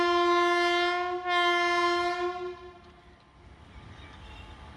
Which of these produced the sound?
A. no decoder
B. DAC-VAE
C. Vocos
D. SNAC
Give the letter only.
A